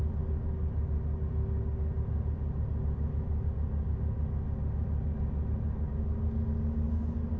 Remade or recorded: recorded